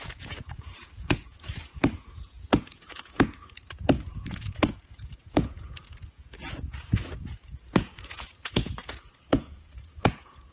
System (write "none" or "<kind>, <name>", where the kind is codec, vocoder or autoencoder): vocoder, Vocos